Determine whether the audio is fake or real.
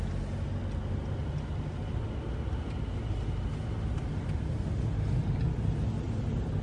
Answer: real